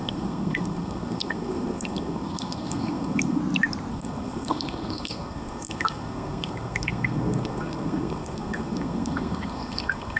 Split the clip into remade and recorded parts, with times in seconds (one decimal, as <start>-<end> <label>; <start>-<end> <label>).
0.0-3.4 remade; 3.4-3.9 recorded; 3.9-10.2 remade